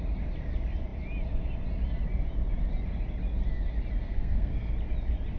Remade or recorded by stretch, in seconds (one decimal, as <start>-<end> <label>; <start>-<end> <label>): 0.0-4.0 recorded; 4.0-4.7 remade; 4.7-5.4 recorded

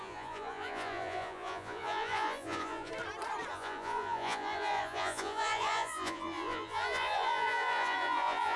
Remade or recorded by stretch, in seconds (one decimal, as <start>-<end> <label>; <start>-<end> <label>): 0.0-2.9 remade; 2.9-3.5 recorded; 3.5-8.6 remade